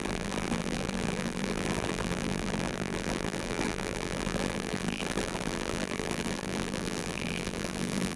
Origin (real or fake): fake